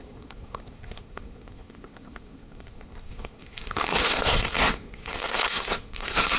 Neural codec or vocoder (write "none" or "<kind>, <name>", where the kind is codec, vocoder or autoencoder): codec, SNAC